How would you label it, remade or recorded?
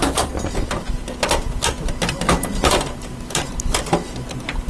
recorded